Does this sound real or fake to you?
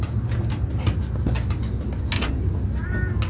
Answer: real